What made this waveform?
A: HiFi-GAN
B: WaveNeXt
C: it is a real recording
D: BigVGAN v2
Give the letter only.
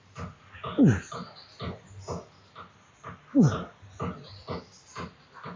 C